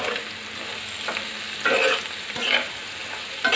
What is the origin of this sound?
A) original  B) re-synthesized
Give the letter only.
A